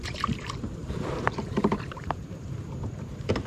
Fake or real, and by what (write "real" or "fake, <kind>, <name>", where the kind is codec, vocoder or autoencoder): fake, vocoder, BigVGAN v2